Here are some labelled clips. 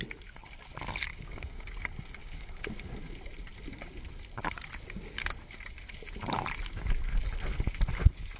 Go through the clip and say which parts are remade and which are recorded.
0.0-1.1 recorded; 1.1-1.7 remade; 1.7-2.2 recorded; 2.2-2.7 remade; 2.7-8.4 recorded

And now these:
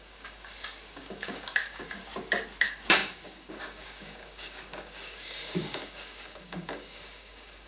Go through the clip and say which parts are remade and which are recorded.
0.0-2.1 remade; 2.1-2.6 recorded; 2.6-7.7 remade

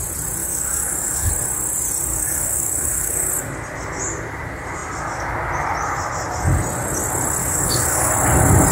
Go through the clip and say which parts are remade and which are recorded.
0.0-0.4 recorded; 0.4-1.3 remade; 1.3-2.1 recorded; 2.1-3.3 remade; 3.3-7.4 recorded; 7.4-8.1 remade; 8.1-8.7 recorded

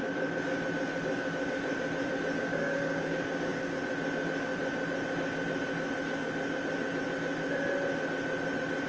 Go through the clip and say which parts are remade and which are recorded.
0.0-2.5 recorded; 2.5-3.8 remade; 3.8-8.9 recorded

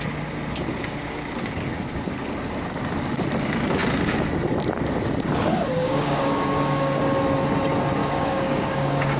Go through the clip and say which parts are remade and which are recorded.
0.0-5.8 recorded; 5.8-7.0 remade; 7.0-8.0 recorded; 8.0-9.2 remade

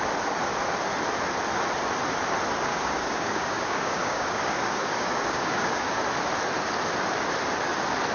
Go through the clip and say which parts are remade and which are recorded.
0.0-2.7 recorded; 2.7-6.0 remade; 6.0-8.1 recorded